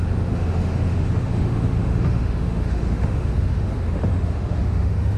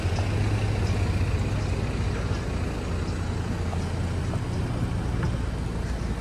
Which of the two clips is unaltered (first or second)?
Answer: second